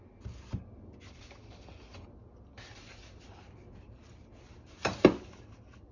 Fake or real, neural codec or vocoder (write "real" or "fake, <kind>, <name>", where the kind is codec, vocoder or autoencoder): real